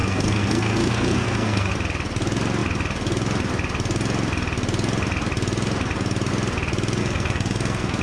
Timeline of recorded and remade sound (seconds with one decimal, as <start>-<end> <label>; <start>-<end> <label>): 0.0-1.7 remade; 1.7-7.0 recorded; 7.0-8.0 remade